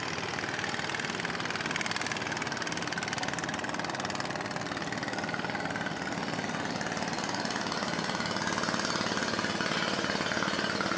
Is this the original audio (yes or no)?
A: yes